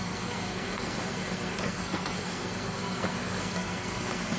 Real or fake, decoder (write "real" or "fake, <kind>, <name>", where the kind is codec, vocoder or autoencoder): fake, codec, SNAC